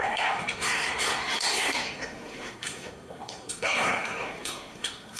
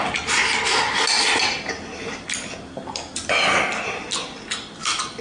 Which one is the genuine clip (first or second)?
second